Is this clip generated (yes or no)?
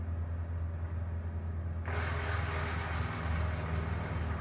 no